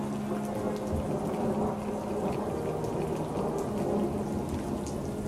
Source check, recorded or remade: recorded